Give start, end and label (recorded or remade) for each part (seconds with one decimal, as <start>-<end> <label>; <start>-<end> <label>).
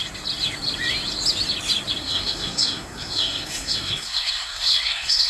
0.0-2.0 recorded; 2.0-5.3 remade